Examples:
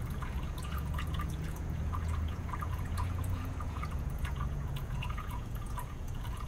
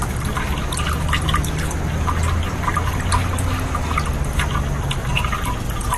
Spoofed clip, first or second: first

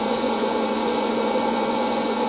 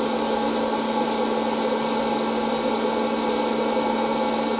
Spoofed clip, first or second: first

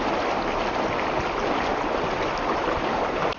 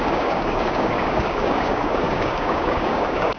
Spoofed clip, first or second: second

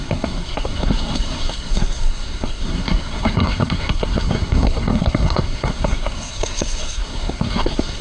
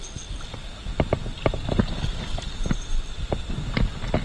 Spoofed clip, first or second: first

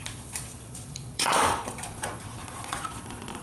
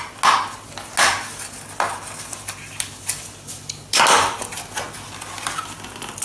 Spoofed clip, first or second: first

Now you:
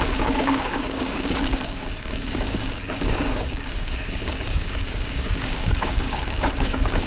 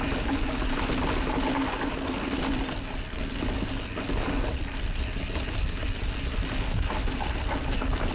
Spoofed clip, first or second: first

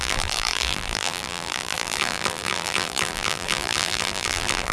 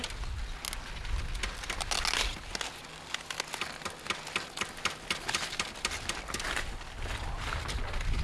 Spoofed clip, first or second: first